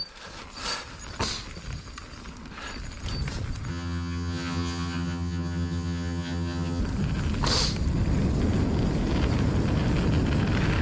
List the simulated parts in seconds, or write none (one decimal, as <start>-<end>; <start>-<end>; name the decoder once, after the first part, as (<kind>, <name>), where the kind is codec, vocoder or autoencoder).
3.7-6.8 (vocoder, HiFi-GAN)